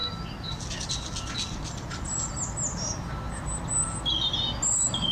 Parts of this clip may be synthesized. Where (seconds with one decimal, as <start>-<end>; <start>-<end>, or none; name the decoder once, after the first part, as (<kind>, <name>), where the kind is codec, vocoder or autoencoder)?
none